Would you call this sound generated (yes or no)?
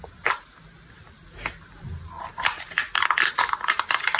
no